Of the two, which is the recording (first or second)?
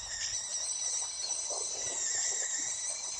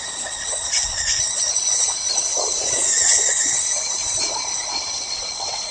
first